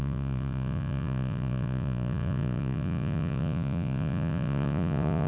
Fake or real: fake